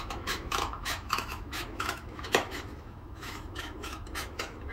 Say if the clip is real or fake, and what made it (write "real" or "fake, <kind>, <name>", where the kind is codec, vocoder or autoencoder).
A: fake, autoencoder, DAC-VAE